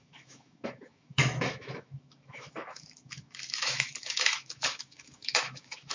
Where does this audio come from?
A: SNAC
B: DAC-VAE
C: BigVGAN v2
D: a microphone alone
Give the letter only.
B